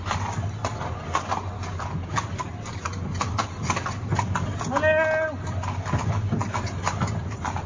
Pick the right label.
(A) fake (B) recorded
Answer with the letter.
B